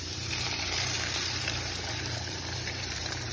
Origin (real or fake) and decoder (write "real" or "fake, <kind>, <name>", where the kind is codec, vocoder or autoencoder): fake, vocoder, BigVGAN v2